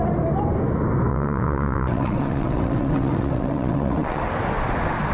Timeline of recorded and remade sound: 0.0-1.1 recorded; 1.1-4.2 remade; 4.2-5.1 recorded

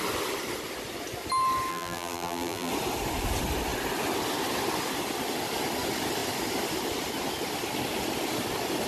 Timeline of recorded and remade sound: 0.0-1.7 recorded; 1.7-2.7 remade; 2.7-8.9 recorded

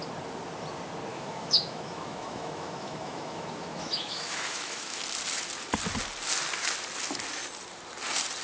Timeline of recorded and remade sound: 0.0-1.1 recorded; 1.1-5.0 remade; 5.0-8.4 recorded

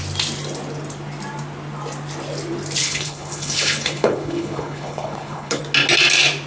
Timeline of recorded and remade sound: 0.0-2.8 recorded; 2.8-5.6 remade; 5.6-6.5 recorded

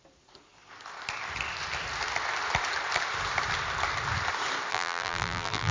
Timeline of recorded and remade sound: 0.0-4.7 recorded; 4.7-5.7 remade